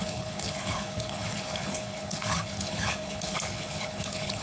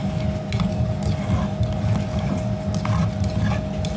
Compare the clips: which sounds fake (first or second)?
first